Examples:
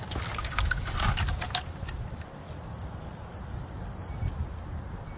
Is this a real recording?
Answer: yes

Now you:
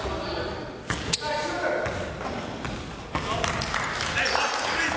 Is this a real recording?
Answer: yes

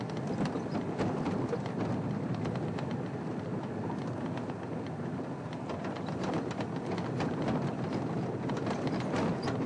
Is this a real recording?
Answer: yes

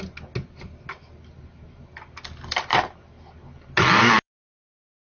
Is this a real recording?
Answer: yes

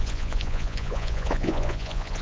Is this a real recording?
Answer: no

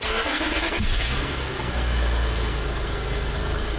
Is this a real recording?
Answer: no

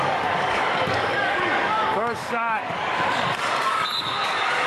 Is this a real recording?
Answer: no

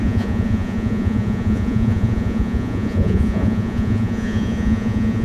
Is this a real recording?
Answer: no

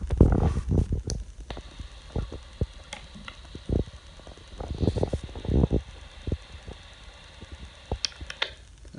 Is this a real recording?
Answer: yes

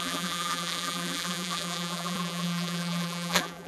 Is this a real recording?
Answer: no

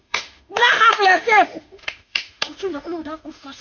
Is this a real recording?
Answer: no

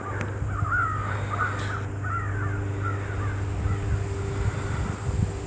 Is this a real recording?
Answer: yes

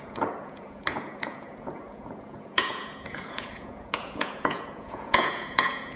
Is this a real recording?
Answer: no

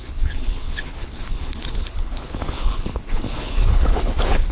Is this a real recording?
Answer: no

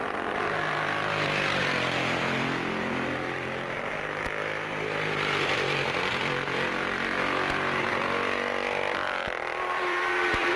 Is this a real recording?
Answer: no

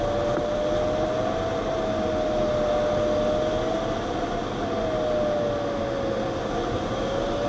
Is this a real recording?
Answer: yes